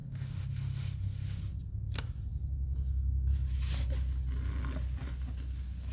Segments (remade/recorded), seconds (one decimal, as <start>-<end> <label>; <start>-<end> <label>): 0.0-1.4 remade; 1.4-5.9 recorded